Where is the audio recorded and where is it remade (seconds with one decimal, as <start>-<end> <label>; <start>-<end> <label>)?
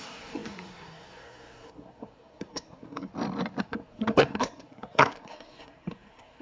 0.0-3.1 remade; 3.1-3.6 recorded; 3.6-6.4 remade